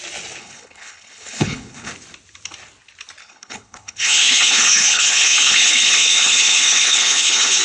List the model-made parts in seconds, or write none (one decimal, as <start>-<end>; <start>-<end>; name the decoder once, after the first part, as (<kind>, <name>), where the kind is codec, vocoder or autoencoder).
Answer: 0.4-1.9 (codec, HILCodec); 3.2-7.6